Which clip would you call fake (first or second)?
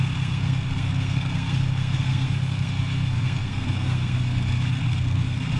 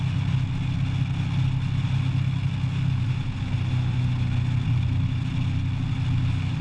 first